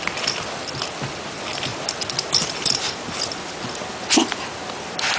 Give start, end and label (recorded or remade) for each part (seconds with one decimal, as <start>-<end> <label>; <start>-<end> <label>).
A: 0.0-5.2 recorded